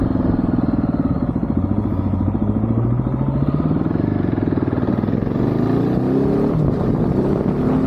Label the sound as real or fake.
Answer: real